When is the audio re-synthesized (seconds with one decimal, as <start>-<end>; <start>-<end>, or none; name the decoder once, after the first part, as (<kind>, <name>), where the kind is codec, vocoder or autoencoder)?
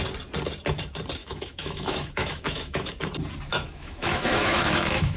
1.2-2.9 (autoencoder, DAC-VAE); 3.5-5.2